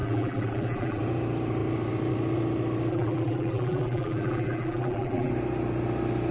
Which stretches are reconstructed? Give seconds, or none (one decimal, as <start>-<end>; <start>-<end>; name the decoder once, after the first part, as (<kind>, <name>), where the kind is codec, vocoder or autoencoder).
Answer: 0.0-1.0 (vocoder, BigVGAN v2); 2.9-5.3